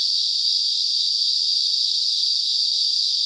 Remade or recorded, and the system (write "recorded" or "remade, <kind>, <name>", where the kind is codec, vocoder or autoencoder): recorded